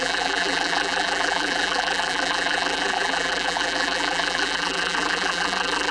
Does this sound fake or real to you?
fake